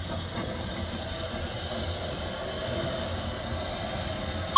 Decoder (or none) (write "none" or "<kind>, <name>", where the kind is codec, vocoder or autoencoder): none